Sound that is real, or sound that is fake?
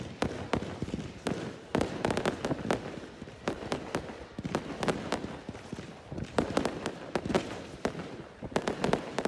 real